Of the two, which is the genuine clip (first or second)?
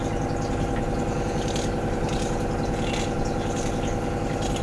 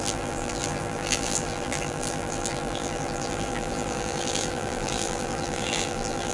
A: first